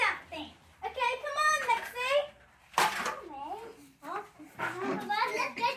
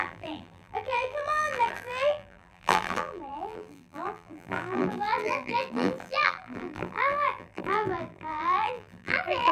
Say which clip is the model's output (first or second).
second